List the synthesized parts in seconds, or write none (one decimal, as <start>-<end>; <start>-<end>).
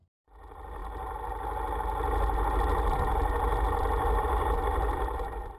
none